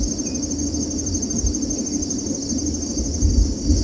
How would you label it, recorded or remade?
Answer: recorded